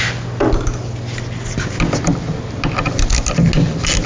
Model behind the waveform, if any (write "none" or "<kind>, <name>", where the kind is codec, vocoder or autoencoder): none